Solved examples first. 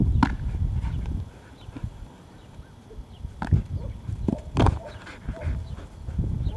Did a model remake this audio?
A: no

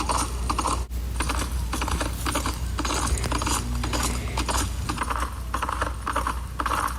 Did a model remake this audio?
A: no